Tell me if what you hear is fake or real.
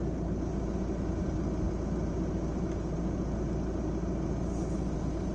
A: real